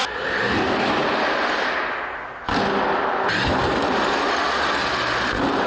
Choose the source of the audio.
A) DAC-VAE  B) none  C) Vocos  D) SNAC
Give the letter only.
B